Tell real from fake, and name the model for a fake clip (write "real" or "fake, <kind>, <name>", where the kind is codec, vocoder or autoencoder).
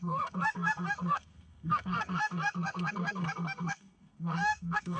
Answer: fake, codec, SNAC